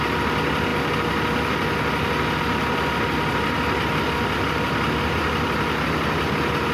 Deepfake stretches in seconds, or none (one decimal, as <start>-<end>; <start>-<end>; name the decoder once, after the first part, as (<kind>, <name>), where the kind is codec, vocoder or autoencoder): none